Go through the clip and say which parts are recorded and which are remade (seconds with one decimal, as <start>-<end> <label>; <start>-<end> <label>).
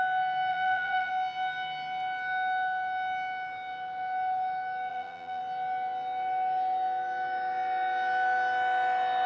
0.0-0.5 recorded; 0.5-1.1 remade; 1.1-4.9 recorded; 4.9-5.4 remade; 5.4-9.3 recorded